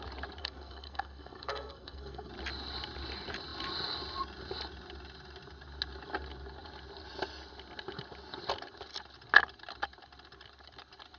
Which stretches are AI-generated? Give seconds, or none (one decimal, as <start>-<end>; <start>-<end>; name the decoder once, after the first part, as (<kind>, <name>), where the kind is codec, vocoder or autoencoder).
0.4-2.3 (codec, SNAC)